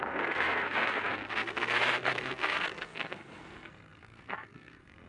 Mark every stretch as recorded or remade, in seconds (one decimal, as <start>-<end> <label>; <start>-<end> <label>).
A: 0.0-5.1 remade